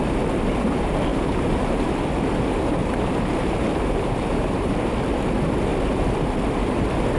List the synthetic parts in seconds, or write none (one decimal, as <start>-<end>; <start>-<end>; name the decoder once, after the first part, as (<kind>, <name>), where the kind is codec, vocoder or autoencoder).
1.1-1.9 (vocoder, BigVGAN v2); 2.8-5.0